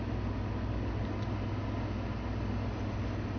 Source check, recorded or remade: recorded